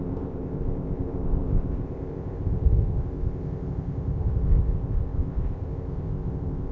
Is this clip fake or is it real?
fake